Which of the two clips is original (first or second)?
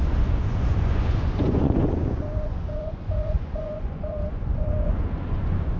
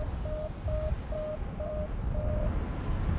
second